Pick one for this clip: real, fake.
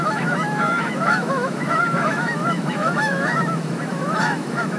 fake